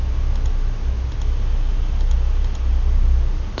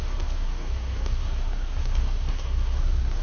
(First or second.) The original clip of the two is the first